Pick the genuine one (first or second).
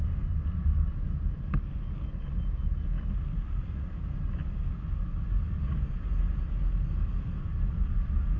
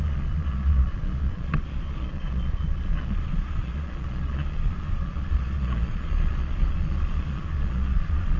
first